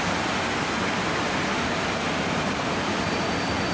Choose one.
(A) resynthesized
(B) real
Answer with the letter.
B